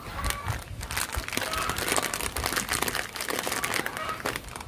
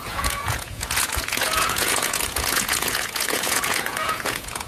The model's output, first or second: second